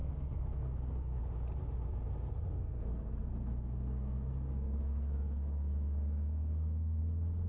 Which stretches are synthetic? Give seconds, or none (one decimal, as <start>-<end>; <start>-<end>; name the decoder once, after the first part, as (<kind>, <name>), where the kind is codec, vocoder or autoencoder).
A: 0.0-1.2 (codec, SNAC); 2.5-7.0